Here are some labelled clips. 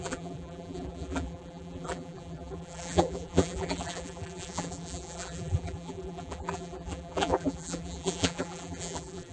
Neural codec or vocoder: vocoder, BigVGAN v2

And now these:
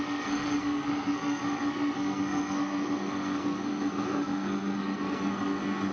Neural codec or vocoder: codec, SNAC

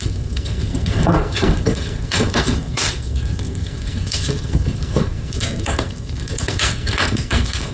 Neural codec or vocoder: codec, SNAC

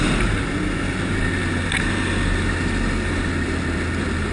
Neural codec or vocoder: none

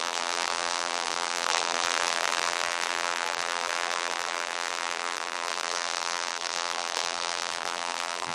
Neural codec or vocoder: vocoder, BigVGAN v2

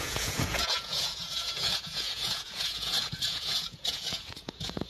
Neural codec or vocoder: vocoder, Vocos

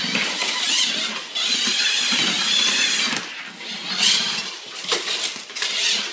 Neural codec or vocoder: none